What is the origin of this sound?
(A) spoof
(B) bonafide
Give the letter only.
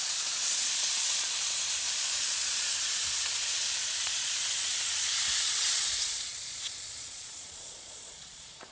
A